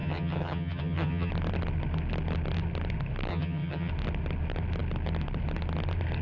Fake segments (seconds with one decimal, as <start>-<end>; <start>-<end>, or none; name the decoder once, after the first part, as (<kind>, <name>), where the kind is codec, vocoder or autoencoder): 0.0-1.3 (vocoder, HiFi-GAN); 3.3-3.9